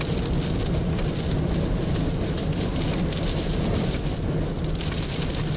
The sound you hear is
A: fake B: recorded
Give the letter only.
B